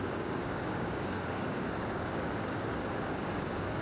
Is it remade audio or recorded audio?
remade